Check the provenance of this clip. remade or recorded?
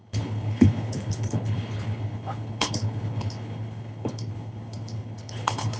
remade